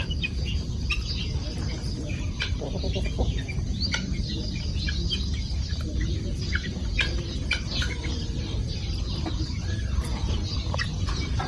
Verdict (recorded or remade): remade